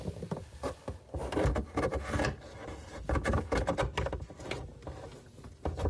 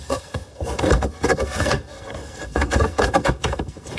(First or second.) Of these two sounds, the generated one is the second